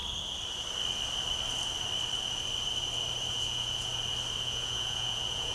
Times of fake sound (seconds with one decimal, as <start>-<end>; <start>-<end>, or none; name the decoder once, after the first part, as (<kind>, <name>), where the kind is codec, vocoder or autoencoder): 3.3-3.9 (vocoder, Vocos); 4.4-5.5